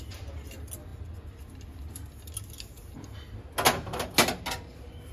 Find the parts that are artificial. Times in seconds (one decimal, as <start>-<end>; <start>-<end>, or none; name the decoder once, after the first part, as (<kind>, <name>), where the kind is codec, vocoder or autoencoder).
none